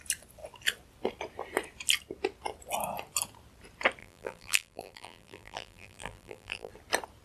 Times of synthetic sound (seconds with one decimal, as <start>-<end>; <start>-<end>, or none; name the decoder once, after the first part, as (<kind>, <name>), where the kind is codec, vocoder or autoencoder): 4.0-6.7 (vocoder, BigVGAN v2)